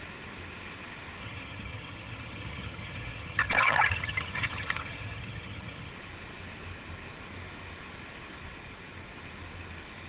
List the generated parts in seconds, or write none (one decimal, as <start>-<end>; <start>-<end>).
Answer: 1.2-5.9